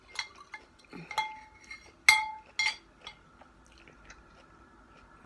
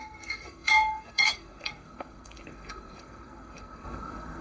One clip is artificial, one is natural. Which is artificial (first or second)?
second